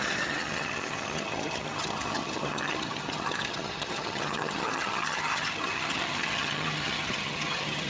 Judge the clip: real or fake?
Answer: fake